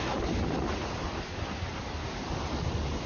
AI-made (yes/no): no